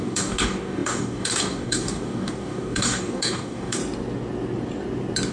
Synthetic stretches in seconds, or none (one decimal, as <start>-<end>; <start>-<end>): 0.0-3.8